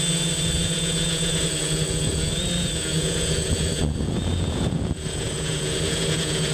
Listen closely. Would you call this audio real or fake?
fake